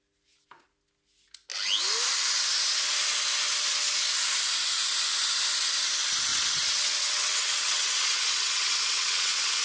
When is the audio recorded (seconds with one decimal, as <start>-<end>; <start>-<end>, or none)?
0.0-6.3